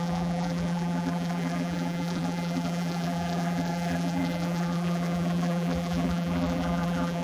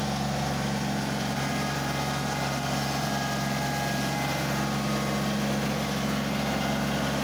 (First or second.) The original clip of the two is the second